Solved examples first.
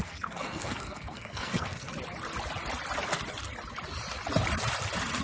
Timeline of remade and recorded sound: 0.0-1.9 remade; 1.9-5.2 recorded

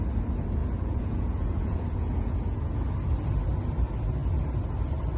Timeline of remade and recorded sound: 0.0-0.6 recorded; 0.6-2.8 remade; 2.8-5.2 recorded

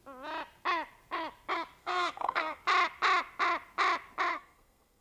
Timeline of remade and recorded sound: 0.0-1.8 recorded; 1.8-2.6 remade; 2.6-4.3 recorded; 4.3-5.0 remade

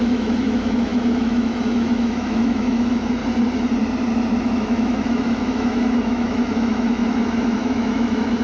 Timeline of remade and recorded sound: 0.0-3.2 remade; 3.2-4.4 recorded; 4.4-8.4 remade

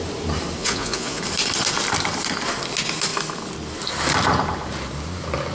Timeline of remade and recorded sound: 0.0-0.6 recorded; 0.6-1.2 remade; 1.2-5.5 recorded

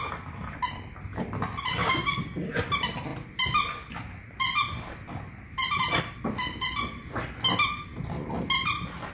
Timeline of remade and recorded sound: 0.0-1.8 recorded; 1.8-2.5 remade; 2.5-9.1 recorded

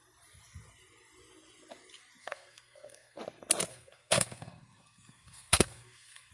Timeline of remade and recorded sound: 0.0-2.2 recorded; 2.2-3.2 remade; 3.2-3.7 recorded; 3.7-6.3 remade

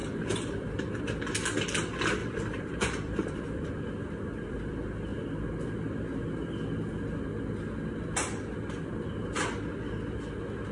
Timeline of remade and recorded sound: 0.0-1.0 remade; 1.0-2.2 recorded; 2.2-3.7 remade; 3.7-10.7 recorded